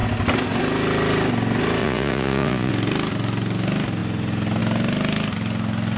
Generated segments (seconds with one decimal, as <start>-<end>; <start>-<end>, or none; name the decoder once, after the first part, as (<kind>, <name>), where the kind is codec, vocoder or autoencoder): 1.8-2.7 (vocoder, Vocos)